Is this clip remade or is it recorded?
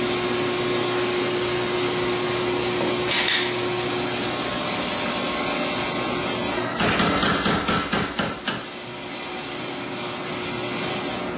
recorded